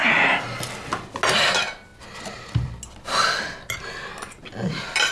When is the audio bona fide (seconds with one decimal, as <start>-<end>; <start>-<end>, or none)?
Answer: 0.0-5.1